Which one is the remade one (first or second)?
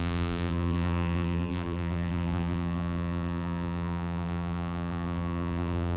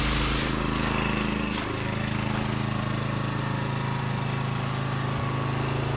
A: first